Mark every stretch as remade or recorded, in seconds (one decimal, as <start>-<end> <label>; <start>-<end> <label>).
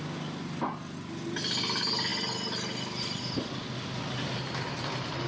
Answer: 0.0-5.3 recorded